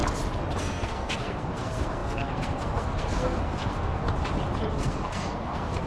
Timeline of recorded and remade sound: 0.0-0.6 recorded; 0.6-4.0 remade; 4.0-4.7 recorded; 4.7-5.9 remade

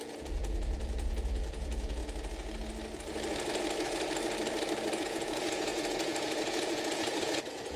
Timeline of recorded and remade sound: 0.0-2.0 remade; 2.0-5.0 recorded; 5.0-7.8 remade

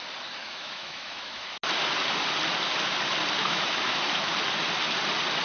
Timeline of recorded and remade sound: 0.0-0.4 recorded; 0.4-1.6 remade; 1.6-3.4 recorded; 3.4-4.3 remade; 4.3-5.4 recorded

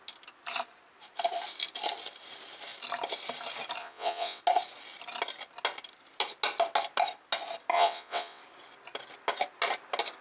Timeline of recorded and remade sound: 0.0-3.8 recorded; 3.8-4.4 remade; 4.4-7.7 recorded; 7.7-8.4 remade; 8.4-10.2 recorded

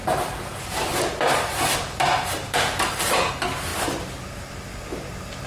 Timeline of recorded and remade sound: 0.0-3.3 remade; 3.3-5.5 recorded

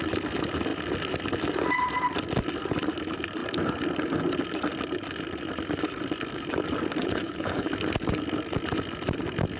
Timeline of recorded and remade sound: 0.0-7.0 recorded; 7.0-7.7 remade; 7.7-9.6 recorded

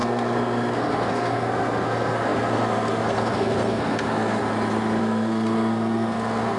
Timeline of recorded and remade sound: 0.0-4.4 remade; 4.4-5.0 recorded; 5.0-6.6 remade

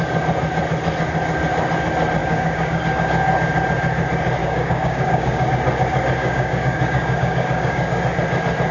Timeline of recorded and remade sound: 0.0-2.2 recorded; 2.2-2.8 remade; 2.8-4.4 recorded; 4.4-5.5 remade; 5.5-6.2 recorded; 6.2-8.0 remade; 8.0-8.7 recorded